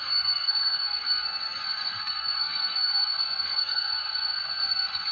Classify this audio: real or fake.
fake